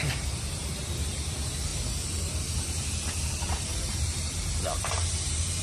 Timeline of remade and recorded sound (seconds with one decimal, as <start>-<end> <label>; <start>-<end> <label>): 0.0-1.7 remade; 1.7-2.4 recorded; 2.4-5.6 remade